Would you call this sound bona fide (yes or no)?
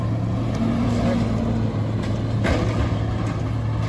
yes